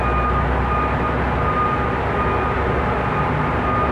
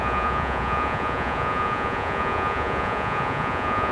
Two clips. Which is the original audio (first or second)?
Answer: first